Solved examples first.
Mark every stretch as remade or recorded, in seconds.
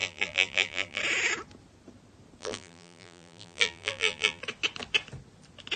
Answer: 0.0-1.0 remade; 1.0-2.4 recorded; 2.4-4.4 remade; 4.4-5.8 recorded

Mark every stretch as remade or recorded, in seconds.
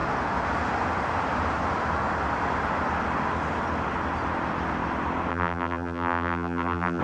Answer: 0.0-5.3 recorded; 5.3-7.0 remade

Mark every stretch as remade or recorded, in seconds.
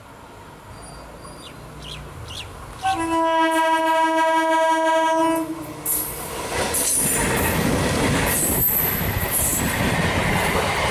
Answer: 0.0-10.9 recorded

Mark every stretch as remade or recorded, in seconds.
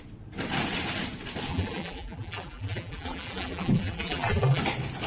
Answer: 0.0-1.5 recorded; 1.5-4.6 remade; 4.6-5.1 recorded